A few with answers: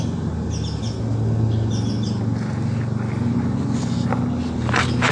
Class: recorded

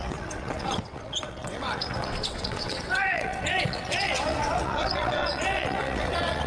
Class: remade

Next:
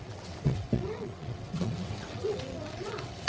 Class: remade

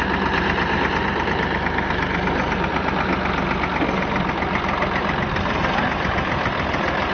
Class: recorded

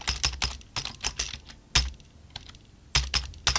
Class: recorded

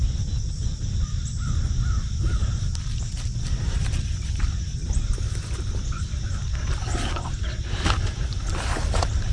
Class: recorded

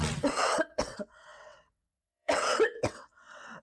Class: remade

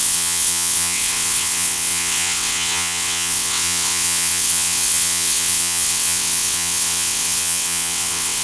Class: remade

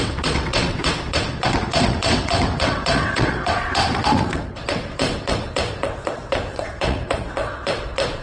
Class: remade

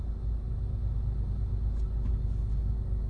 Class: recorded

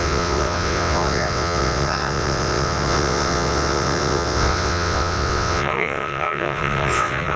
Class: remade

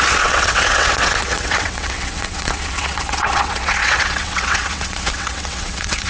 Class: remade